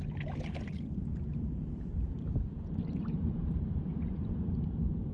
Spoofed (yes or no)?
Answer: yes